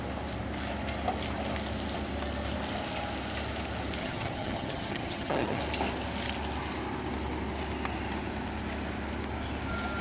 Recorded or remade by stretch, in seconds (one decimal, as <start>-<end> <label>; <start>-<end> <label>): 0.0-4.0 recorded; 4.0-5.6 remade; 5.6-10.0 recorded